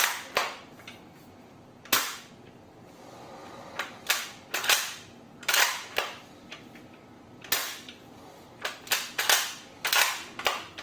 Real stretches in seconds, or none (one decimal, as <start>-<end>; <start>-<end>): 0.0-7.6; 8.5-10.8